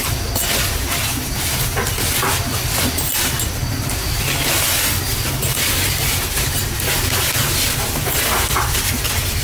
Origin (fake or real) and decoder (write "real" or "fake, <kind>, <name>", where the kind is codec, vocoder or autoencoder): real